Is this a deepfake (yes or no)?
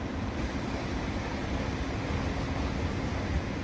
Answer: no